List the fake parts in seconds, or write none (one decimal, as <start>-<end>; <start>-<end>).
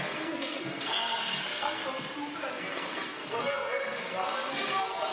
0.0-1.8; 2.5-5.1